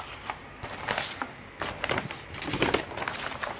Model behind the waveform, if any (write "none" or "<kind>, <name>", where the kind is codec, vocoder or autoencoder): none